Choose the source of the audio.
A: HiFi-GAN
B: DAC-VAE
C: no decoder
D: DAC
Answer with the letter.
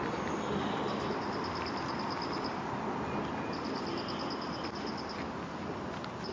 C